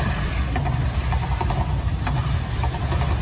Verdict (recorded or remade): recorded